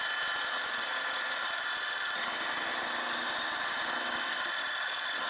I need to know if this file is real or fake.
real